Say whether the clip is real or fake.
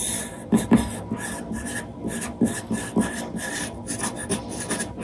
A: fake